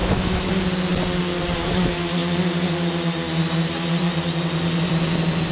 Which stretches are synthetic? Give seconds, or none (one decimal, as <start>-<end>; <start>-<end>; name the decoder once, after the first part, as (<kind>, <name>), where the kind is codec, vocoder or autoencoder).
0.0-0.5 (autoencoder, DAC-VAE)